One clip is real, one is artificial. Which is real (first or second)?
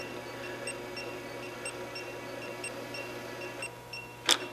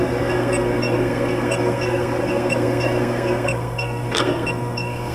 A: first